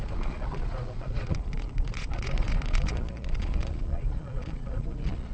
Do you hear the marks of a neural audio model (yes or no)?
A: yes